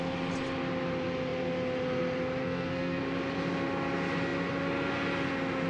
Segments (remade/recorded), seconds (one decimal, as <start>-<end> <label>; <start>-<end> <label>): 0.0-2.4 recorded; 2.4-3.0 remade; 3.0-5.7 recorded